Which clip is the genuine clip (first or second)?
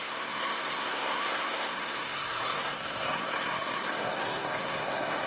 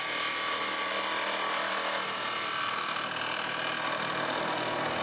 second